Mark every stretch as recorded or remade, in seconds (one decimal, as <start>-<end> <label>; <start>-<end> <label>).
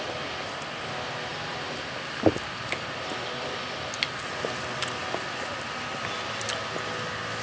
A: 0.0-7.4 recorded